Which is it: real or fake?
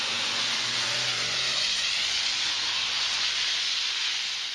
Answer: fake